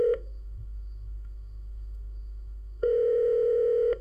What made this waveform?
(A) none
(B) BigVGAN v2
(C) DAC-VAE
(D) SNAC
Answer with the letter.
C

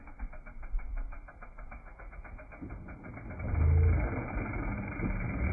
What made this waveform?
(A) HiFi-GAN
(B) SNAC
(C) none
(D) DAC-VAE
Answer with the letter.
C